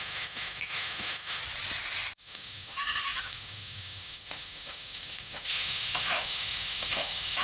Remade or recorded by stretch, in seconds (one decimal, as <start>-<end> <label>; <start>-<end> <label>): 0.0-1.4 remade; 1.4-2.2 recorded; 2.2-7.4 remade